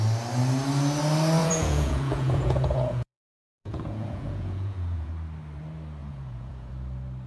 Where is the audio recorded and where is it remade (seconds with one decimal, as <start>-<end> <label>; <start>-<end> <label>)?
0.0-1.4 recorded; 1.4-5.1 remade; 5.1-6.0 recorded; 6.0-6.7 remade; 6.7-7.3 recorded